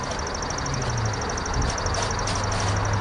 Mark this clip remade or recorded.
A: recorded